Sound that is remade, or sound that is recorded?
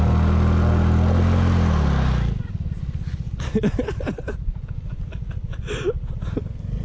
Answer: recorded